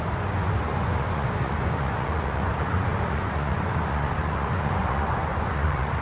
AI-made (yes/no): yes